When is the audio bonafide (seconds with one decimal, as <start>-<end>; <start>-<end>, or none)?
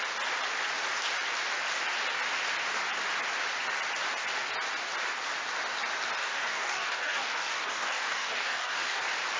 0.0-6.2; 9.0-9.4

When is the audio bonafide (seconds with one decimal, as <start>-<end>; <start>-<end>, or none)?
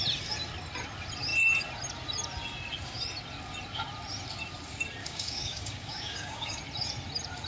0.0-5.0; 6.6-7.5